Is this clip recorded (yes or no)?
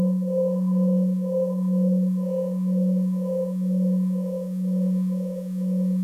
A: no